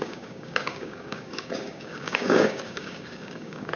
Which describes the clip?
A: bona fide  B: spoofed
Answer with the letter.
B